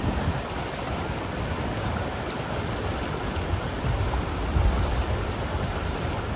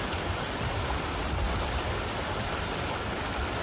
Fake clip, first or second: second